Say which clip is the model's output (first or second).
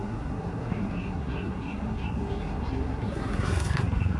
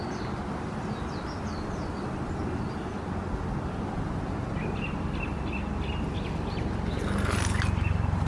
first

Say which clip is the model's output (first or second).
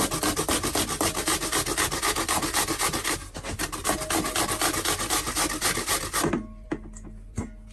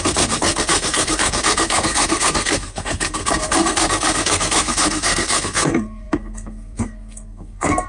second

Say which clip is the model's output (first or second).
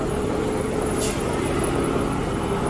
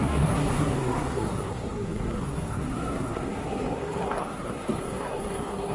second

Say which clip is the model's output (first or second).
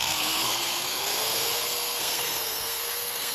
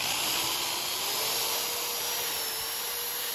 first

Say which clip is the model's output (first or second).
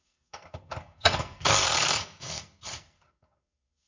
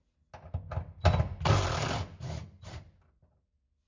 first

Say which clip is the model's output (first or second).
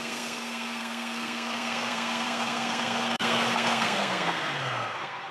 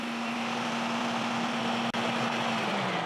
first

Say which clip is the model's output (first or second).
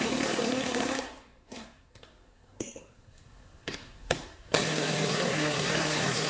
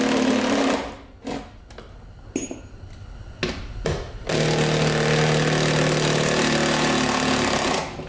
first